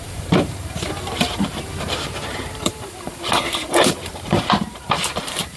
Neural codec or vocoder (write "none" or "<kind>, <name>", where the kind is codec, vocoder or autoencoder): vocoder, BigVGAN v2